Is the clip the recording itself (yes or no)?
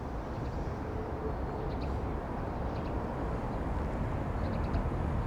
yes